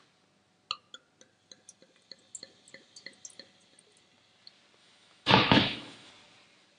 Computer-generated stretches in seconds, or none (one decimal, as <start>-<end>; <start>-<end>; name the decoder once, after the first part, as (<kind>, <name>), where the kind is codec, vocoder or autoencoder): 4.8-6.1 (autoencoder, DAC-VAE)